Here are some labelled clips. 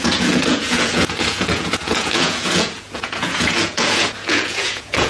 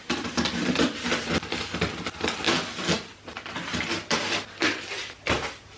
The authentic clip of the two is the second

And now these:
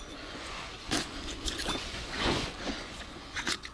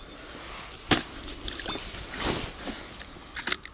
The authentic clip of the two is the second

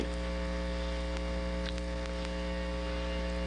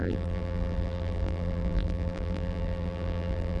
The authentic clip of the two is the first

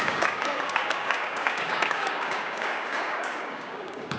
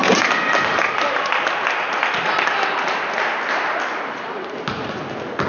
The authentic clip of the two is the second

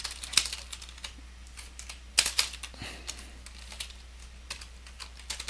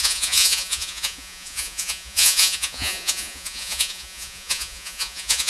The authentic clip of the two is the first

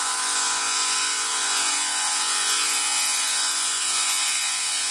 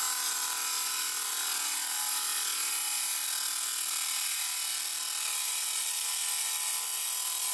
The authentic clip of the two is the second